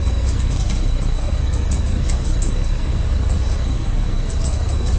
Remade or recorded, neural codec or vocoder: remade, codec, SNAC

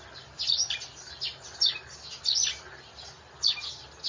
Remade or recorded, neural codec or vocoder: recorded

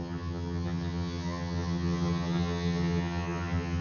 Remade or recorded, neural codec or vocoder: remade, vocoder, HiFi-GAN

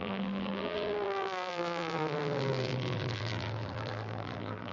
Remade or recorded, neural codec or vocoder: remade, vocoder, BigVGAN v2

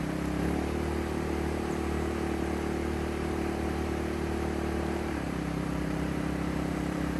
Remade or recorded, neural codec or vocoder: remade, vocoder, BigVGAN v2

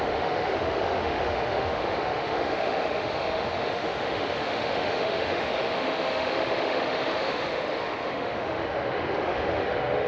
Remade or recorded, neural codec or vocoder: remade, autoencoder, DAC-VAE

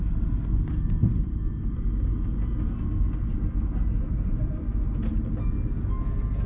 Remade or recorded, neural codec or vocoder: recorded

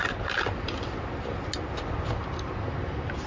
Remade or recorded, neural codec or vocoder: recorded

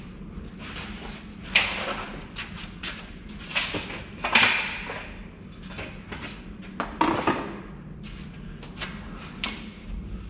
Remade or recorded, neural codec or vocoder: recorded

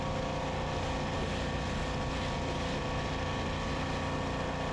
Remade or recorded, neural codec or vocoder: recorded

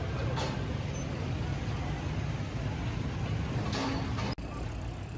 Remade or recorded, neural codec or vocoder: recorded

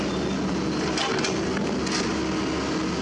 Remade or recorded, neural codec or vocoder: recorded